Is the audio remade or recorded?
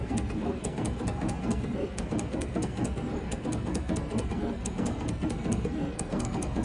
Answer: remade